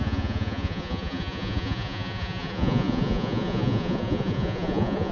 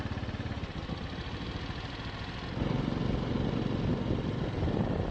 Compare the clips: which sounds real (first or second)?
second